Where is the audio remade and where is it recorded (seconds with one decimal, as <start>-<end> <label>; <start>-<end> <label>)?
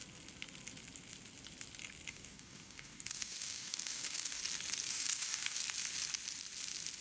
0.0-2.1 recorded; 2.1-4.4 remade; 4.4-4.9 recorded; 4.9-5.6 remade; 5.6-7.0 recorded